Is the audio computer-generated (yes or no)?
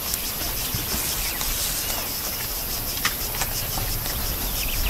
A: no